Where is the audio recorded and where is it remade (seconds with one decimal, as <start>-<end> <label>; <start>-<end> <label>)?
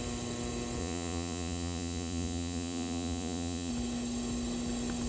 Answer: 0.0-0.8 recorded; 0.8-3.7 remade; 3.7-5.1 recorded